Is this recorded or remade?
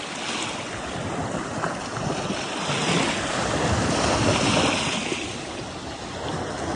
recorded